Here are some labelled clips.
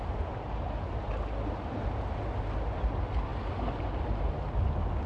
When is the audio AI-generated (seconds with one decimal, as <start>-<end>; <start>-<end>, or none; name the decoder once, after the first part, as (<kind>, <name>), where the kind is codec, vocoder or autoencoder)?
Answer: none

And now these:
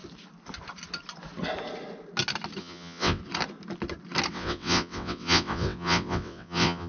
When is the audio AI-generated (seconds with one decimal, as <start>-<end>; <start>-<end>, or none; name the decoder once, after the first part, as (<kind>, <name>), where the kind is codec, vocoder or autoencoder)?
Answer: 2.6-3.2 (vocoder, WaveNeXt); 4.3-6.9

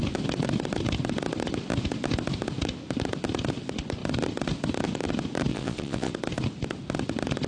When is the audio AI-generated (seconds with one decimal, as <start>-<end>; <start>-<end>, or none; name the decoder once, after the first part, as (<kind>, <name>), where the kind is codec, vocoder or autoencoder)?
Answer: 5.5-6.1 (vocoder, WaveNeXt)